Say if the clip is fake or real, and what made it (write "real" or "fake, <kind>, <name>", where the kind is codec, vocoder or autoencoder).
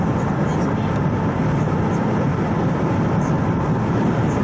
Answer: real